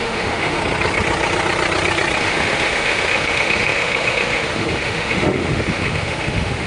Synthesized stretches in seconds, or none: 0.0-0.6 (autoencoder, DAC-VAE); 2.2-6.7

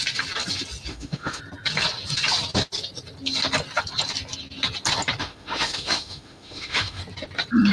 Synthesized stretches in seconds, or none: 0.9-1.4 (autoencoder, DAC-VAE); 5.2-7.0

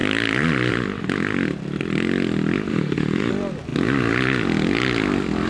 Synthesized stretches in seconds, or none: 2.7-3.3 (autoencoder, DAC-VAE)

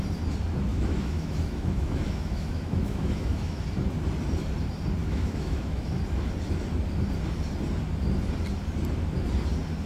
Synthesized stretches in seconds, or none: 0.7-3.6 (autoencoder, DAC-VAE); 5.0-6.0

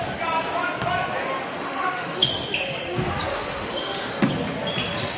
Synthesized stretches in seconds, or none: 1.6-2.3 (autoencoder, DAC-VAE); 3.3-4.1

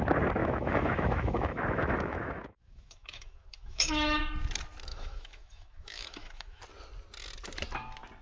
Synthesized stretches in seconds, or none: 0.4-4.2 (autoencoder, DAC-VAE); 4.9-6.6